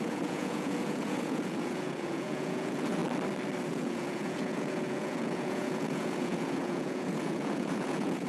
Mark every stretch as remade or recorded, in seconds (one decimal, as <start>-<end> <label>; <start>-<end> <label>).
0.0-3.0 remade; 3.0-3.7 recorded; 3.7-8.3 remade